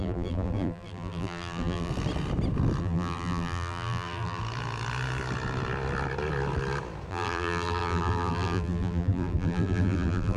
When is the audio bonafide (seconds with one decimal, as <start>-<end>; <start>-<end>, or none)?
1.9-2.8; 4.4-7.1